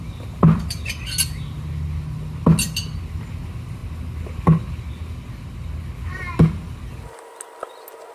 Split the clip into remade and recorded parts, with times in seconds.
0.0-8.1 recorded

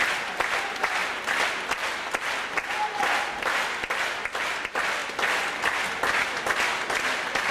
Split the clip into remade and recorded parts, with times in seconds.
0.0-7.5 recorded

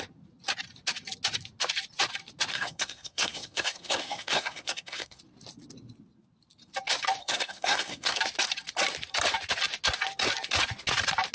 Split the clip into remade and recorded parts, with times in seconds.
0.0-2.5 recorded; 2.5-5.2 remade; 5.2-7.2 recorded; 7.2-8.2 remade; 8.2-11.3 recorded

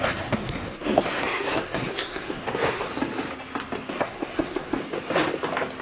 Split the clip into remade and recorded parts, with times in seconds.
0.0-2.9 remade; 2.9-3.9 recorded; 3.9-4.8 remade; 4.8-5.8 recorded

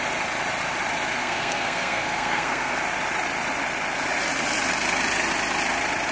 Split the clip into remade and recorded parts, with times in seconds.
0.0-1.2 recorded; 1.2-2.8 remade; 2.8-6.1 recorded

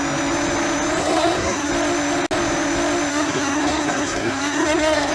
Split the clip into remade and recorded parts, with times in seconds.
0.0-1.0 recorded; 1.0-1.7 remade; 1.7-3.1 recorded; 3.1-5.1 remade

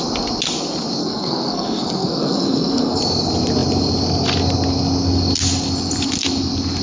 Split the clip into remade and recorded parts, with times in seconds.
0.0-1.0 recorded; 1.0-3.0 remade; 3.0-6.8 recorded

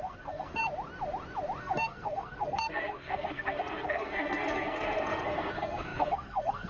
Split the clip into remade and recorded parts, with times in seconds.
0.0-0.6 remade; 0.6-1.6 recorded; 1.6-6.7 remade